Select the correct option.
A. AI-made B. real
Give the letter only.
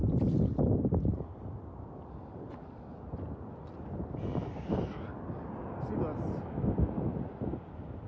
B